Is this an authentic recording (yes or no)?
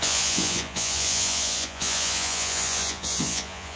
no